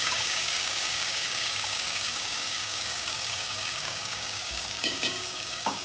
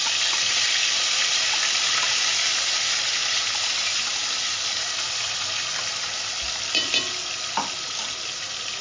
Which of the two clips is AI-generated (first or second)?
first